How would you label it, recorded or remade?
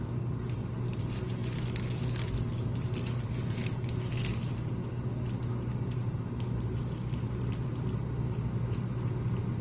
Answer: recorded